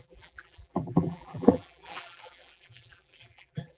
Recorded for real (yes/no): no